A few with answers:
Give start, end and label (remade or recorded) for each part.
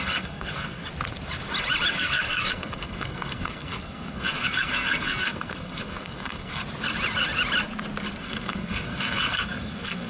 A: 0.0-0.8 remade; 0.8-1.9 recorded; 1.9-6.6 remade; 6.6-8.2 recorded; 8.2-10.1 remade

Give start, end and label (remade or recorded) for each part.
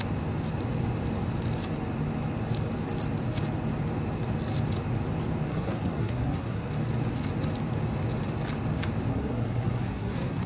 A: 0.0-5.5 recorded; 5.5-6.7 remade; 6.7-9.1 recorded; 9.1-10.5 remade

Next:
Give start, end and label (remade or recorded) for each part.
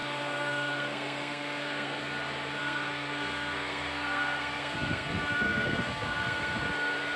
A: 0.0-2.0 remade; 2.0-2.6 recorded; 2.6-6.6 remade; 6.6-7.2 recorded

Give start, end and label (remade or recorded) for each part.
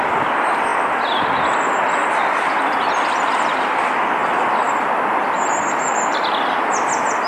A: 0.0-7.3 recorded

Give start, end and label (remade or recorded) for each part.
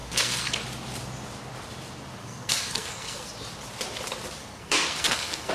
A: 0.0-0.6 remade; 0.6-2.2 recorded; 2.2-3.3 remade; 3.3-4.4 recorded; 4.4-5.5 remade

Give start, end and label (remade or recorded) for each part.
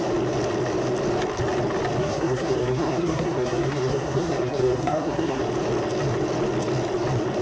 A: 0.0-2.0 recorded; 2.0-5.4 remade; 5.4-7.4 recorded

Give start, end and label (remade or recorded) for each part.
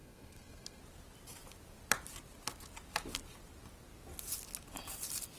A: 0.0-0.8 remade; 0.8-5.4 recorded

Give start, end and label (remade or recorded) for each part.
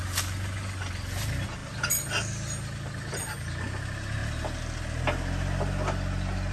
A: 0.0-6.5 recorded